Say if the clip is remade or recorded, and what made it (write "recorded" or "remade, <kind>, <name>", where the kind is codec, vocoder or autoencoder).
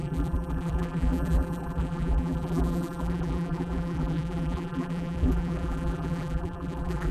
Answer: remade, vocoder, BigVGAN v2